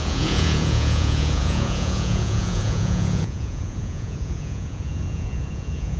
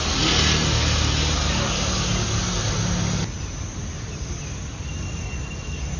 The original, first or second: second